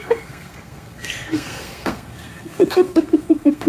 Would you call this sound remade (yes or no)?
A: yes